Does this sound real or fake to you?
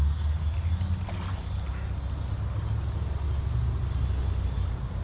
real